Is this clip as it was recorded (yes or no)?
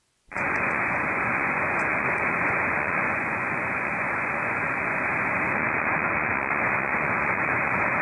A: no